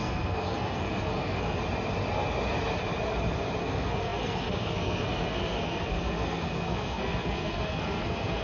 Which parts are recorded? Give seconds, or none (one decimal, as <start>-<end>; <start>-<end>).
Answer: 1.6-3.6